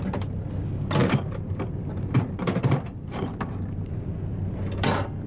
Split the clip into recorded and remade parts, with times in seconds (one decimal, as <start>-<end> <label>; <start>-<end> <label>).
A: 0.0-1.0 recorded; 1.0-4.2 remade; 4.2-5.3 recorded